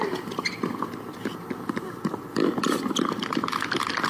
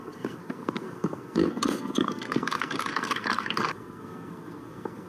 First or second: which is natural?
first